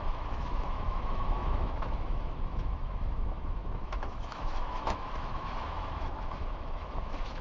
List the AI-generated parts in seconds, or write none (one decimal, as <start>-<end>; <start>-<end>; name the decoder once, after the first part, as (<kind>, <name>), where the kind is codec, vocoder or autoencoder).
0.0-7.4 (autoencoder, DAC-VAE)